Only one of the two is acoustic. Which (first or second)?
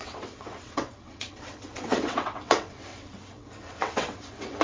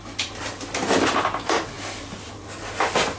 second